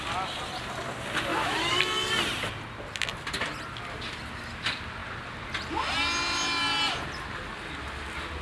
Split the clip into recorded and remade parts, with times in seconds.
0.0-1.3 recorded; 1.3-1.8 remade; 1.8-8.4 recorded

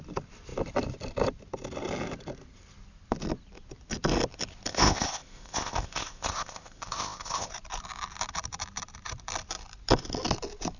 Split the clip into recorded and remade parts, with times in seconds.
0.0-4.7 recorded; 4.7-7.5 remade; 7.5-10.8 recorded

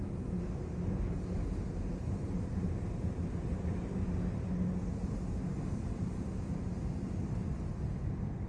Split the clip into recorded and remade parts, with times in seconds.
0.0-8.5 recorded

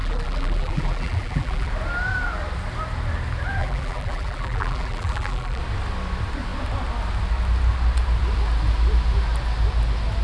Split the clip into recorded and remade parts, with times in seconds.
0.0-1.7 remade; 1.7-3.6 recorded; 3.6-5.6 remade; 5.6-10.2 recorded

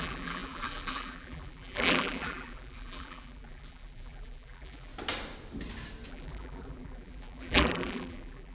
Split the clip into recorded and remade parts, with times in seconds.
0.0-4.9 remade; 4.9-6.1 recorded; 6.1-8.5 remade

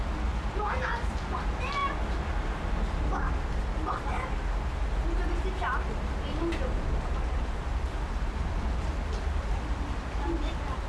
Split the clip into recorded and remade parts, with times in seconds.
0.0-10.9 recorded

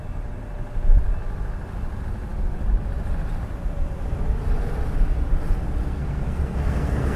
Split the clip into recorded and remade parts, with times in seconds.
0.0-5.8 recorded; 5.8-7.2 remade

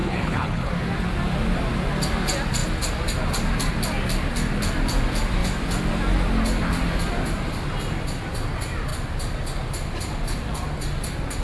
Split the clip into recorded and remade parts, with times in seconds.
0.0-0.7 remade; 0.7-11.4 recorded